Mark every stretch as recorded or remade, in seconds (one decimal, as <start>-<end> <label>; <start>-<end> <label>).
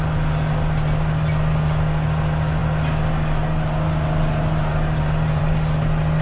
0.0-6.2 recorded